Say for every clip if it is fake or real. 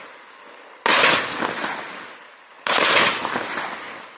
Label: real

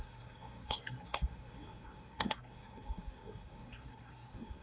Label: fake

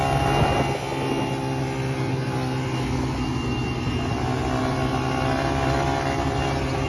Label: real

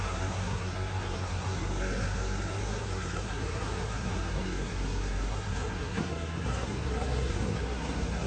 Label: fake